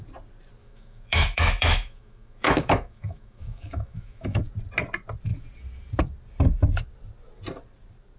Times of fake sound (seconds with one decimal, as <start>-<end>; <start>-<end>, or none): 0.6-4.4